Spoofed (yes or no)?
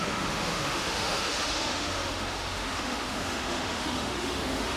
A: yes